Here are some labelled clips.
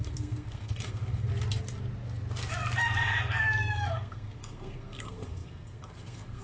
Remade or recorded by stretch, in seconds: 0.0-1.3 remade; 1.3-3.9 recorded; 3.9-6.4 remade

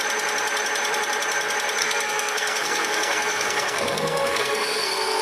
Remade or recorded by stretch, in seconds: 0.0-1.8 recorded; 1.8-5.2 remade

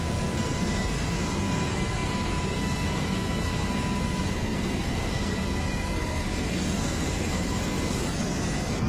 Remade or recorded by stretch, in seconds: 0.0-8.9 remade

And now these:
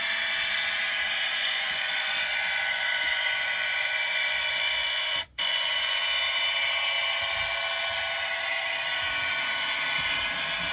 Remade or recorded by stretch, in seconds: 0.0-1.4 recorded; 1.4-6.0 remade; 6.0-10.7 recorded